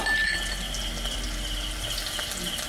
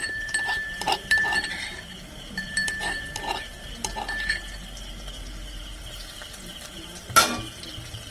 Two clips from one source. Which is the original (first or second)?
first